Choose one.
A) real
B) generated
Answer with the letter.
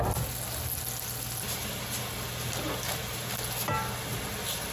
A